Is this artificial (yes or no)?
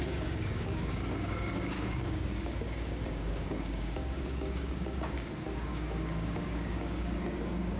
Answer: yes